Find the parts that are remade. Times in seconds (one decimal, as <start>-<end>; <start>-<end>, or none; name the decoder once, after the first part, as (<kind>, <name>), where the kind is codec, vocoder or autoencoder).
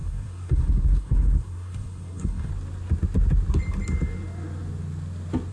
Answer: 0.0-2.5 (codec, SNAC)